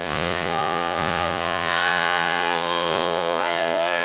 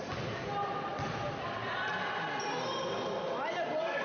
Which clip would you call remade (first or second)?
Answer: first